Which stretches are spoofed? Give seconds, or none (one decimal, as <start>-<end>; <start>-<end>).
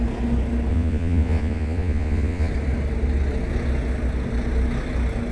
0.7-2.5